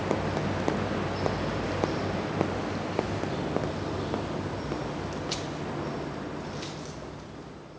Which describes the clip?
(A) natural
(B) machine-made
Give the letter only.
A